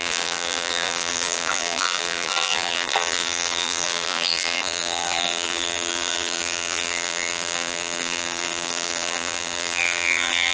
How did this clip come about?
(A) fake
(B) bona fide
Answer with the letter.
A